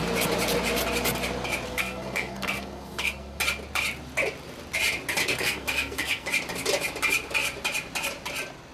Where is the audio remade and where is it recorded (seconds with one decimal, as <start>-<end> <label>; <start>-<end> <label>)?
0.0-1.7 recorded; 1.7-3.4 remade; 3.4-5.2 recorded; 5.2-6.3 remade; 6.3-8.7 recorded